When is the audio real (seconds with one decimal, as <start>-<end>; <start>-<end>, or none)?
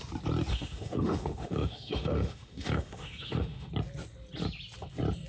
0.0-0.5; 3.7-5.3